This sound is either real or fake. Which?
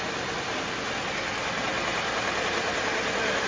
real